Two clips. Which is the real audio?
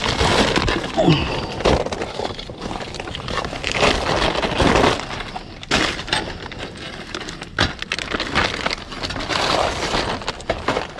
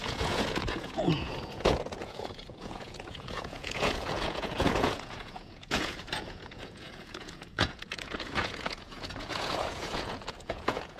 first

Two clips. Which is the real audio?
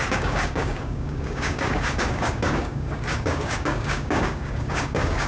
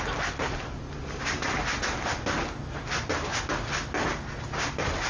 second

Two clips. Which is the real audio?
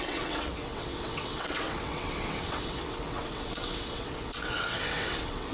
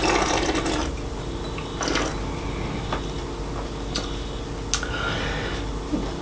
second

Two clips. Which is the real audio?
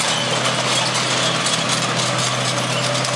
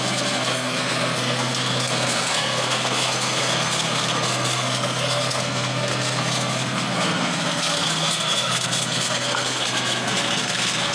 first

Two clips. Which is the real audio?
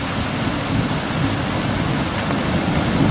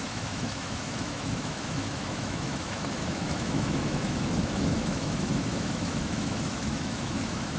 first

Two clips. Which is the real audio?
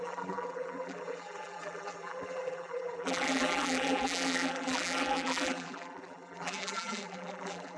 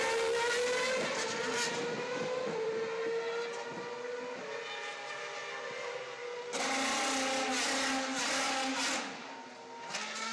second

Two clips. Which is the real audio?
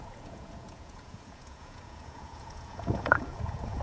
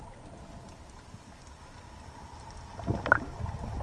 second